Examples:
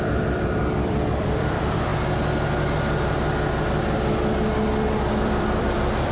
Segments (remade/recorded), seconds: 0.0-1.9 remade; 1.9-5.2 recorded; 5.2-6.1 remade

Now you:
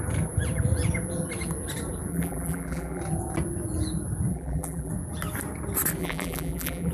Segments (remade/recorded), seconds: 0.0-2.1 recorded; 2.1-3.0 remade; 3.0-4.3 recorded; 4.3-4.9 remade; 4.9-6.0 recorded; 6.0-6.9 remade

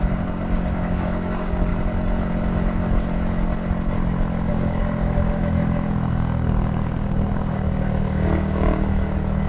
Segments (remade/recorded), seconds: 0.0-1.7 remade; 1.7-4.5 recorded; 4.5-9.5 remade

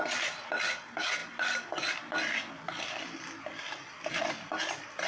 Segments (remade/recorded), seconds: 0.0-1.2 recorded; 1.2-4.3 remade; 4.3-5.1 recorded

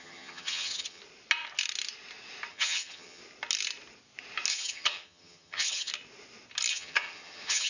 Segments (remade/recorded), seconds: 0.0-1.0 remade; 1.0-2.5 recorded; 2.5-3.2 remade; 3.2-4.5 recorded; 4.5-5.9 remade; 5.9-6.7 recorded; 6.7-7.7 remade